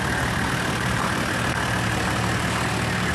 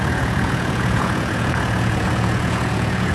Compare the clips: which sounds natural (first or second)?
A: first